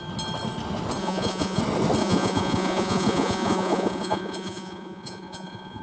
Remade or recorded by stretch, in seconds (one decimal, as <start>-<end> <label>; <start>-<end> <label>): 0.0-1.0 recorded; 1.0-1.6 remade; 1.6-2.0 recorded; 2.0-5.8 remade